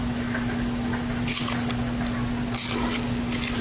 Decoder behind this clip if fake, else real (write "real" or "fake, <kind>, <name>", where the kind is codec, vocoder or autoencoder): real